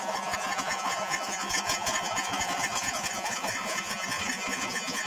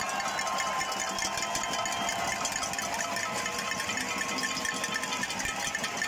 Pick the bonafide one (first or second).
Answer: second